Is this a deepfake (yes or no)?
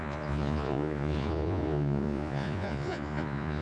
yes